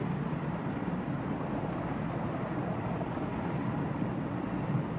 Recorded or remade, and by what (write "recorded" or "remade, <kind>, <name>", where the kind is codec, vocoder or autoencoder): recorded